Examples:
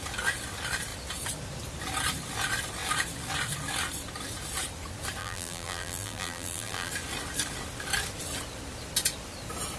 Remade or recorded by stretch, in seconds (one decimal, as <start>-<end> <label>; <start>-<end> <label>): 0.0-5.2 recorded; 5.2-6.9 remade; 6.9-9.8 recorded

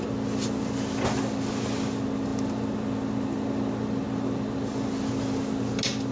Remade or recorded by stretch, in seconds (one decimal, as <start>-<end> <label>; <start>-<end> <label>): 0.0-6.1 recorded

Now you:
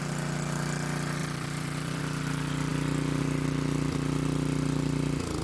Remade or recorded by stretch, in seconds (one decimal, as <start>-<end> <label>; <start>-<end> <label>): 0.0-1.2 recorded; 1.2-2.0 remade; 2.0-5.4 recorded

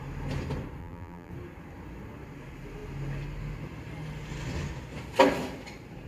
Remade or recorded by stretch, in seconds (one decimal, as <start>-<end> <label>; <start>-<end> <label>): 0.0-0.8 recorded; 0.8-1.3 remade; 1.3-6.1 recorded

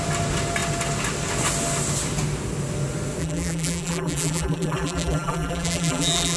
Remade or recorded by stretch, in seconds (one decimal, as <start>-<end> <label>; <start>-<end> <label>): 0.0-3.2 recorded; 3.2-6.4 remade

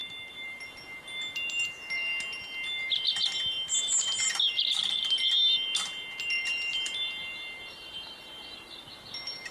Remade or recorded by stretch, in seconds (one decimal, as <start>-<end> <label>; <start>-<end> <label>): 0.0-0.8 remade; 0.8-6.7 recorded; 6.7-8.8 remade; 8.8-9.5 recorded

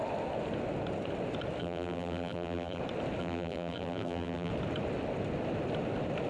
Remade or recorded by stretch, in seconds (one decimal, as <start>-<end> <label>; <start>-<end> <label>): 0.0-1.6 recorded; 1.6-2.8 remade; 2.8-3.2 recorded; 3.2-4.5 remade; 4.5-6.3 recorded

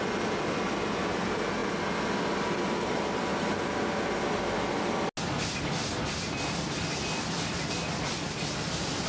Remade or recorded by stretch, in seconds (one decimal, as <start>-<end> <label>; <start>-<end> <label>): 0.0-9.1 recorded